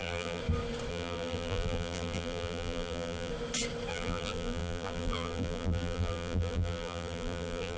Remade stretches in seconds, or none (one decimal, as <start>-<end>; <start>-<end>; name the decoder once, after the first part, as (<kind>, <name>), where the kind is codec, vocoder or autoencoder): 0.0-0.4 (vocoder, BigVGAN v2); 0.9-3.3; 3.9-7.8